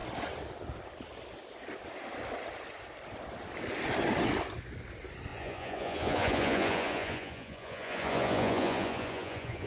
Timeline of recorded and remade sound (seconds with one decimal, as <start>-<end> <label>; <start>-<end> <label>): 0.0-5.3 recorded; 5.3-9.7 remade